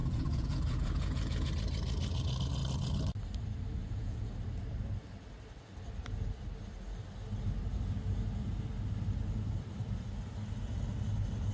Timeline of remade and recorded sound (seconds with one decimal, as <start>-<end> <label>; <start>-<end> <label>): 0.0-1.5 remade; 1.5-3.8 recorded; 3.8-4.3 remade; 4.3-11.5 recorded